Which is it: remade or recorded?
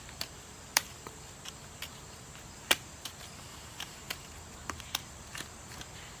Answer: remade